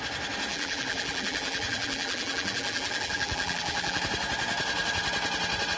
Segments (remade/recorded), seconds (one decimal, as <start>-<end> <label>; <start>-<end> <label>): 0.0-0.5 recorded; 0.5-4.0 remade; 4.0-5.8 recorded